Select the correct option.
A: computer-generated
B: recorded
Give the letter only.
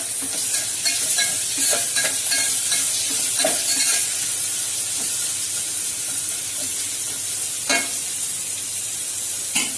B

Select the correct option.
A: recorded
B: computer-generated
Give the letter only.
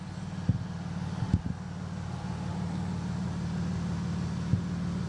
A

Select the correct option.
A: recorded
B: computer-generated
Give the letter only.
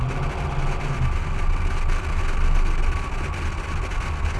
A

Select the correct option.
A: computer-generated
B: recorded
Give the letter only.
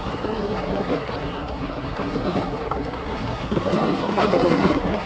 A